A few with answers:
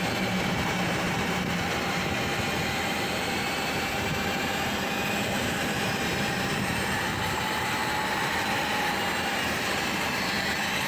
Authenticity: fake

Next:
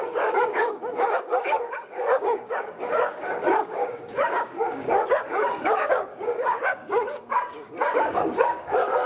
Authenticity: fake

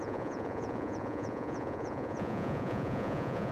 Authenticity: fake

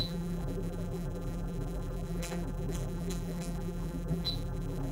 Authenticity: fake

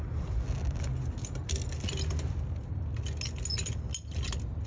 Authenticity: real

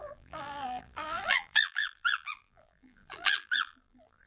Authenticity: fake